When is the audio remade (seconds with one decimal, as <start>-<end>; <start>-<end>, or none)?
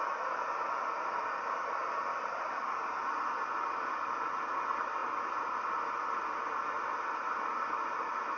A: none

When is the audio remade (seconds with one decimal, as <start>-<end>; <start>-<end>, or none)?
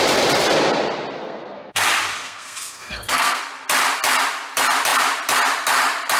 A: 1.2-1.8; 2.2-3.4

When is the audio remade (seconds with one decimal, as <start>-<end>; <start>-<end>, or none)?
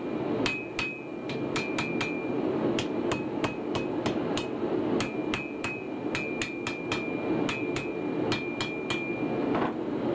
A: none